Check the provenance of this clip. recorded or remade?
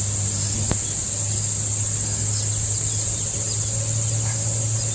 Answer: recorded